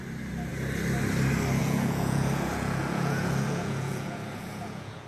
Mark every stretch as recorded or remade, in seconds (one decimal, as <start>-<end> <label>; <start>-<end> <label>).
0.0-1.6 recorded; 1.6-5.1 remade

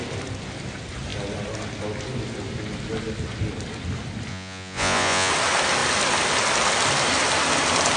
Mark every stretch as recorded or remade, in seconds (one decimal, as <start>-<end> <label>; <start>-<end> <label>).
0.0-4.3 recorded; 4.3-5.3 remade; 5.3-8.0 recorded

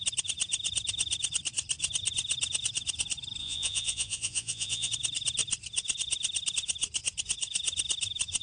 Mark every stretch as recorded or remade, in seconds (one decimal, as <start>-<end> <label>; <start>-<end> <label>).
0.0-3.4 recorded; 3.4-4.9 remade; 4.9-8.4 recorded

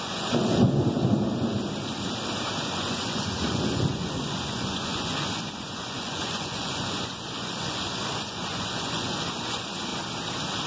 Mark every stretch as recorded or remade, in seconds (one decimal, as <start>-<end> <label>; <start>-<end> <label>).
0.0-1.0 remade; 1.0-2.6 recorded; 2.6-9.9 remade; 9.9-10.7 recorded

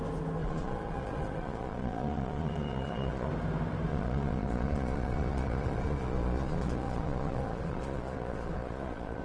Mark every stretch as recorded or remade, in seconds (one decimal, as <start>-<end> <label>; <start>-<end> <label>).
0.0-0.4 recorded; 0.4-3.3 remade; 3.3-3.9 recorded; 3.9-9.2 remade

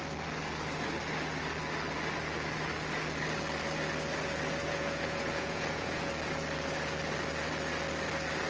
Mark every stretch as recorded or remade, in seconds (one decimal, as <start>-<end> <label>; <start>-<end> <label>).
0.0-4.6 recorded; 4.6-6.1 remade; 6.1-8.5 recorded

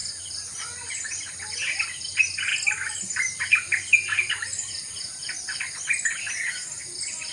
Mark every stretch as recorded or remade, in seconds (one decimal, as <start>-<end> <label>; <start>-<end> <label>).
0.0-7.3 recorded